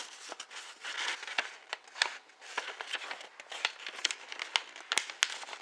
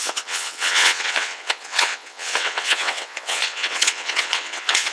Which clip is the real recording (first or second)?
first